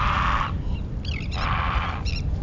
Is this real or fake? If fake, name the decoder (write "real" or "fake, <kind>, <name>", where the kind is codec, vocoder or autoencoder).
fake, vocoder, BigVGAN v2